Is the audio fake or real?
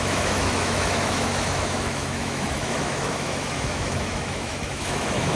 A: fake